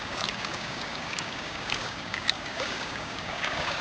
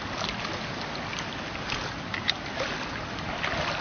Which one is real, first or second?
second